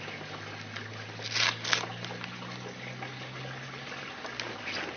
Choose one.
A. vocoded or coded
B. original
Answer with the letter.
B